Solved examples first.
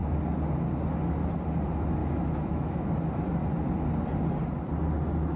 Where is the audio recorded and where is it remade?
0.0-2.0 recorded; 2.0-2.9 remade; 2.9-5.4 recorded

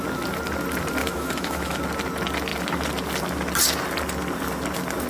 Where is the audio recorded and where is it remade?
0.0-1.0 recorded; 1.0-1.8 remade; 1.8-5.1 recorded

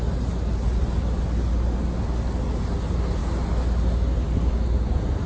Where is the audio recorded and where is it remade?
0.0-5.3 recorded